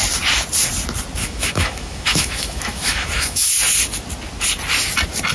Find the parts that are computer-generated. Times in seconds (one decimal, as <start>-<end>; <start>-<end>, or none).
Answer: 1.2-3.5